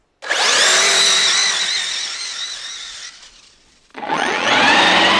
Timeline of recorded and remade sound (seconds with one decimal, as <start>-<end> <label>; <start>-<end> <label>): 0.0-3.9 recorded; 3.9-4.5 remade; 4.5-5.2 recorded